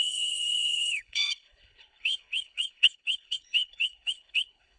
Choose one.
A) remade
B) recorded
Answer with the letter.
A